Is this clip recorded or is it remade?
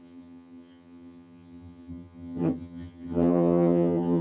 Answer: remade